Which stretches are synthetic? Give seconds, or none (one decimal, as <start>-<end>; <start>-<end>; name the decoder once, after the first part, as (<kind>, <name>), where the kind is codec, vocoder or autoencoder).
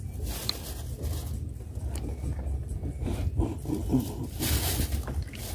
3.9-4.4 (vocoder, BigVGAN v2)